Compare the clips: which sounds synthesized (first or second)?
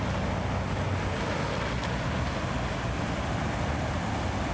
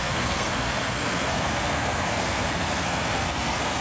second